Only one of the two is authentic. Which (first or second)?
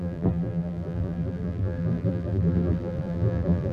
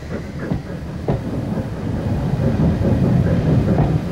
second